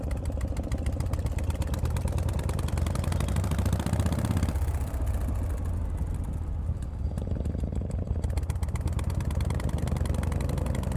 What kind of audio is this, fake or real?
real